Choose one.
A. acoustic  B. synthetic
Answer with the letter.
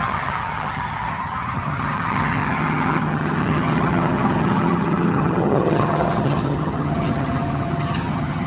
B